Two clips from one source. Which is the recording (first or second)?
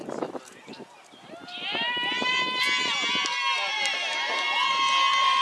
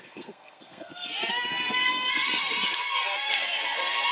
first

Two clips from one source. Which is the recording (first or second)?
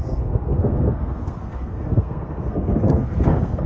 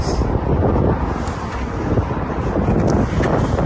second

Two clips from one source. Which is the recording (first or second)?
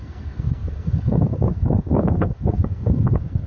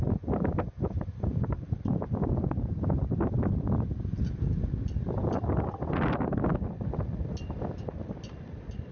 second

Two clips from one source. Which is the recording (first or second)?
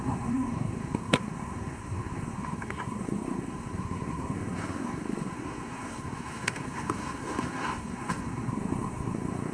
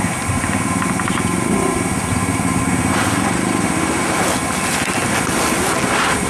second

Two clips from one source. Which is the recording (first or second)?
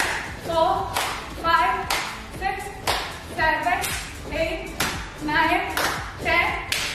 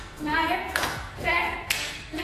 first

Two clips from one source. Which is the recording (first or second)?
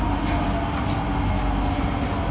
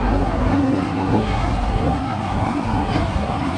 first